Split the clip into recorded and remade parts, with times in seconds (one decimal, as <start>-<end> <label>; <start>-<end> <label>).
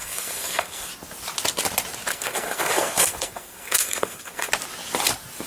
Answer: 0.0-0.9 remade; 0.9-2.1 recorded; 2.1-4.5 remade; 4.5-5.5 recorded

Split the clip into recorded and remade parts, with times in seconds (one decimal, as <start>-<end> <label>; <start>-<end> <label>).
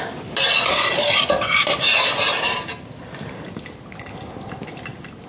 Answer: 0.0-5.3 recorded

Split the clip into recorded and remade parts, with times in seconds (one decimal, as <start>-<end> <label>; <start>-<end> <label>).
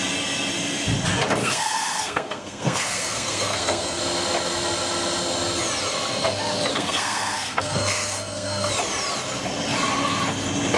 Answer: 0.0-1.4 recorded; 1.4-4.0 remade; 4.0-6.7 recorded; 6.7-8.7 remade; 8.7-10.8 recorded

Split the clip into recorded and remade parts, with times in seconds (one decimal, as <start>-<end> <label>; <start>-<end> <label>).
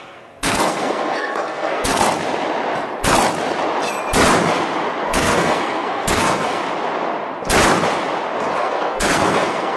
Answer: 0.0-2.0 remade; 2.0-5.0 recorded; 5.0-6.6 remade; 6.6-8.6 recorded; 8.6-9.8 remade